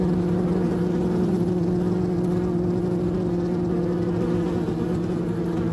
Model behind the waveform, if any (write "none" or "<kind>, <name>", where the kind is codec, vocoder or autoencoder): none